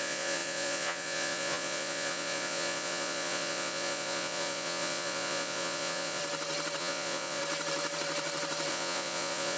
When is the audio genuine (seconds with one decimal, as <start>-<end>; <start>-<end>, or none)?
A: 6.2-6.8; 7.4-8.7